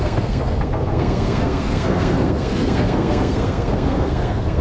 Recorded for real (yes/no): no